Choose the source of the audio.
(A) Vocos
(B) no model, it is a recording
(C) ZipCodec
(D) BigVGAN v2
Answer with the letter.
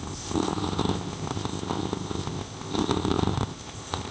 C